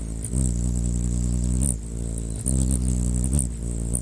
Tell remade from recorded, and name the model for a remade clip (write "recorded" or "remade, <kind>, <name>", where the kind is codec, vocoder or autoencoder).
recorded